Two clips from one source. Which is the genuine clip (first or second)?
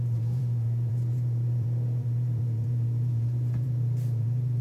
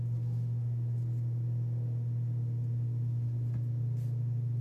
second